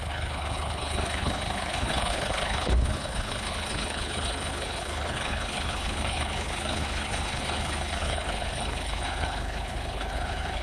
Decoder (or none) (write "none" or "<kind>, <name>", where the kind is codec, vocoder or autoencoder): codec, HILCodec